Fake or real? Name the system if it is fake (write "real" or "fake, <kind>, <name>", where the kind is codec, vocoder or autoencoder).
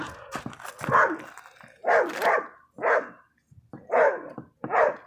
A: real